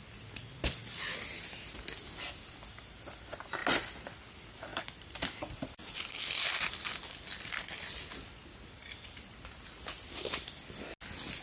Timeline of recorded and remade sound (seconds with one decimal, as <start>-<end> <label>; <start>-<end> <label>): 0.0-4.7 recorded; 4.7-6.1 remade; 6.1-11.4 recorded